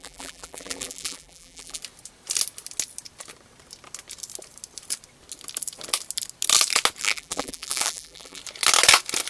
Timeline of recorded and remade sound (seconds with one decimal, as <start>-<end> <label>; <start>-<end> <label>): 0.0-1.8 remade; 1.8-7.0 recorded; 7.0-8.4 remade; 8.4-9.3 recorded

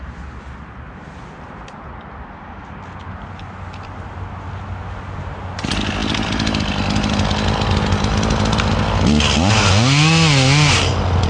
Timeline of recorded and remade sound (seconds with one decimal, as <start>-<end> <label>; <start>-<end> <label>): 0.0-11.3 recorded

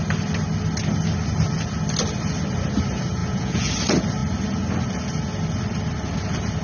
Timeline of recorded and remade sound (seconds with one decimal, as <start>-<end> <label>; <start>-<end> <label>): 0.0-3.2 recorded; 3.2-3.7 remade; 3.7-6.6 recorded

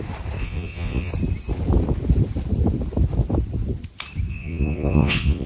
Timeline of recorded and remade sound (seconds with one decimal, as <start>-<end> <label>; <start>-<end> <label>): 0.0-0.4 recorded; 0.4-1.1 remade; 1.1-4.3 recorded; 4.3-5.5 remade

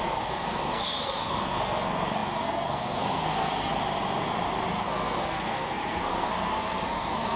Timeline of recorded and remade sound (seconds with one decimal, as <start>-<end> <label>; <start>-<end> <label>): 0.0-3.7 remade; 3.7-4.7 recorded; 4.7-7.4 remade

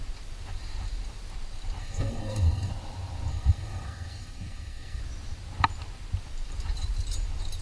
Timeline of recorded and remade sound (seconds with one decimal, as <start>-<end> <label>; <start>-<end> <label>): 0.0-1.8 recorded; 1.8-2.7 remade; 2.7-3.3 recorded; 3.3-5.0 remade; 5.0-7.6 recorded

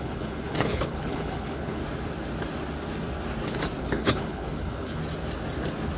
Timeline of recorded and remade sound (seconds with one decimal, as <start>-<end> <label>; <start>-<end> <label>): 0.0-1.8 remade; 1.8-3.8 recorded; 3.8-5.0 remade; 5.0-6.0 recorded

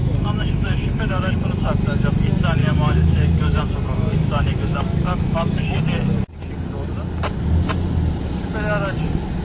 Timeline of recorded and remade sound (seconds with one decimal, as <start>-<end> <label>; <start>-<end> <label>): 0.0-1.3 remade; 1.3-2.6 recorded; 2.6-3.6 remade; 3.6-4.1 recorded; 4.1-5.8 remade; 5.8-9.4 recorded